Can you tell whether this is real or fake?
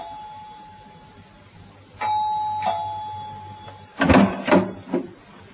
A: real